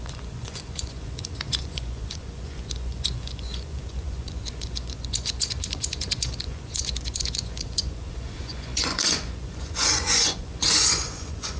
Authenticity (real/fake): fake